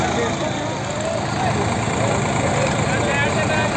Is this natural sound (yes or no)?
yes